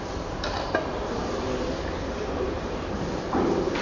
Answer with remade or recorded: recorded